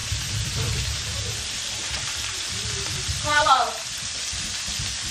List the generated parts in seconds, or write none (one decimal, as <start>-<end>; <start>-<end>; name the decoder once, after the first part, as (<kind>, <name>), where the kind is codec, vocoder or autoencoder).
0.0-0.5 (vocoder, BigVGAN v2); 1.1-4.2